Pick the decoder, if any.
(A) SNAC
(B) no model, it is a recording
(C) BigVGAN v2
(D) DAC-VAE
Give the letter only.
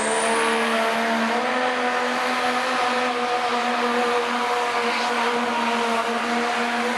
B